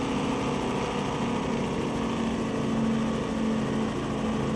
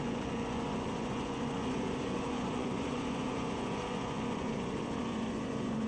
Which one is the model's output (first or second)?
second